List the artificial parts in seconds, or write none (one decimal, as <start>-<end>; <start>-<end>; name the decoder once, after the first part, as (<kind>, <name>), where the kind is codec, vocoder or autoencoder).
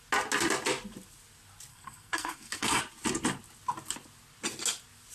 1.7-2.8 (codec, SNAC)